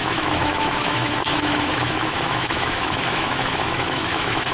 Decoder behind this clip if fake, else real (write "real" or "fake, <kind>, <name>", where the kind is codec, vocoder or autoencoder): fake, autoencoder, DAC-VAE